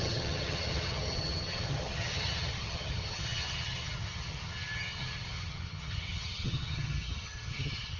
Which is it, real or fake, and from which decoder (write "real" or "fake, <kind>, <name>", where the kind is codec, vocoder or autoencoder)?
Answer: fake, vocoder, HiFi-GAN